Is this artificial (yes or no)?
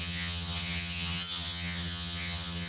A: yes